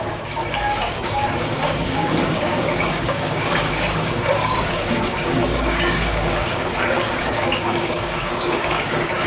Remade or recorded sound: remade